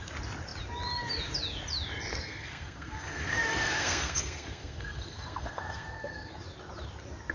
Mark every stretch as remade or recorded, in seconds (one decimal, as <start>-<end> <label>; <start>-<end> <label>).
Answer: 0.0-2.1 recorded; 2.1-6.4 remade; 6.4-7.3 recorded